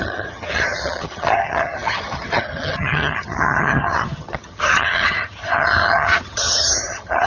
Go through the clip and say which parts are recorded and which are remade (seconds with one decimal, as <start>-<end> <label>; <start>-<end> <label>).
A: 0.0-7.3 remade